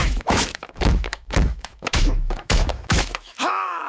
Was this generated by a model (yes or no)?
yes